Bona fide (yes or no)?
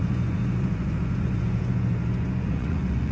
no